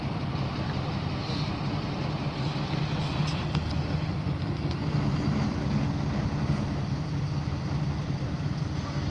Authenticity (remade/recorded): recorded